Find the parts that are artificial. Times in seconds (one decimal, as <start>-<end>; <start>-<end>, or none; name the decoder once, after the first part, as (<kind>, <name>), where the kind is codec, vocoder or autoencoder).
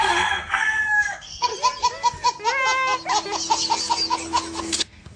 0.0-1.5 (codec, SNAC); 4.6-5.2